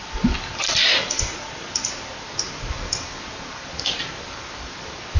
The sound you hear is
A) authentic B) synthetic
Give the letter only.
A